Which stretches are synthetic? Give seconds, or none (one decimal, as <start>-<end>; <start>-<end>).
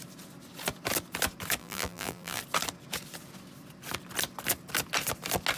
1.6-2.4